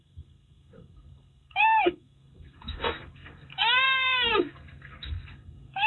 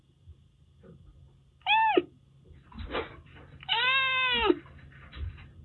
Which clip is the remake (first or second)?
first